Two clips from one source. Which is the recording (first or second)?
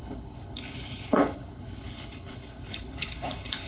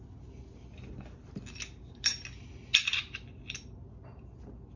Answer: second